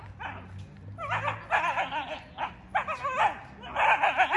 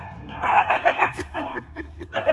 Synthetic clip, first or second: second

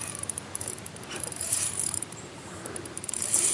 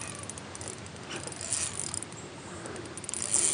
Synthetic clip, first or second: first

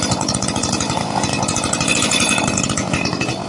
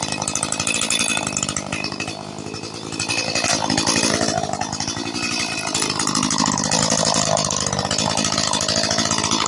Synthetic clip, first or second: first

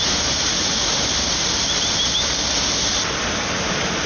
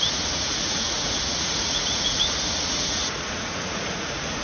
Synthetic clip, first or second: second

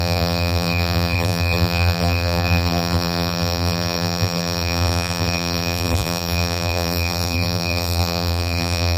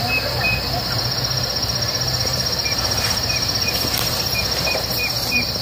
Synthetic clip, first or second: first